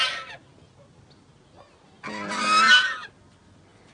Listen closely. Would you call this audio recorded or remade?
recorded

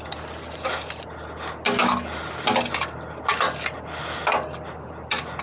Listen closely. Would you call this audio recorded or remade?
recorded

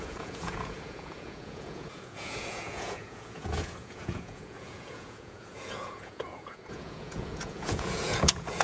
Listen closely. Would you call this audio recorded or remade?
remade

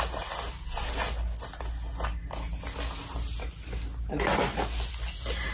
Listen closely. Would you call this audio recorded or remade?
recorded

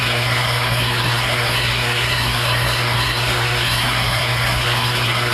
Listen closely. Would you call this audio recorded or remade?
remade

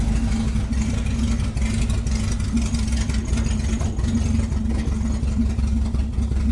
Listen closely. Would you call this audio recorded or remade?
recorded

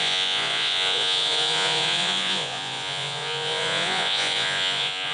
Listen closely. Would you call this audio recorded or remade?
remade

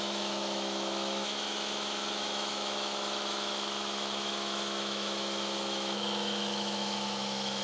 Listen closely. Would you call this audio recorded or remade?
remade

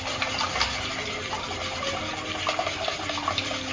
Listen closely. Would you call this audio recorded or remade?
recorded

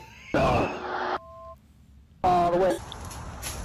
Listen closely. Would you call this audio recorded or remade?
recorded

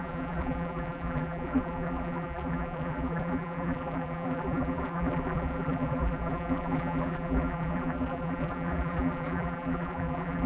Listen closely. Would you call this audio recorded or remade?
remade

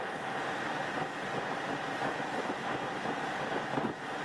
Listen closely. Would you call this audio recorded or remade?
recorded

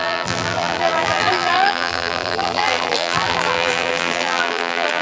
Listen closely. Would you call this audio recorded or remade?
remade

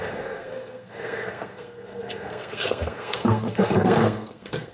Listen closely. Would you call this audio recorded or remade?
remade